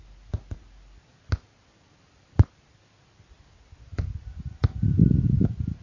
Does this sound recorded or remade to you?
recorded